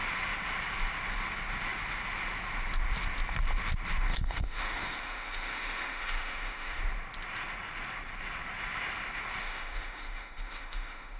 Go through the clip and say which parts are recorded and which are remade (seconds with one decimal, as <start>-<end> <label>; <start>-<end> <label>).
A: 0.0-4.1 recorded; 4.1-6.8 remade; 6.8-9.4 recorded; 9.4-11.2 remade